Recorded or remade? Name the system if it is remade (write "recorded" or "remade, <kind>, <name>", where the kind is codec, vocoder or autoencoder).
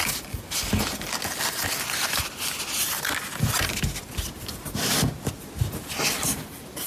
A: recorded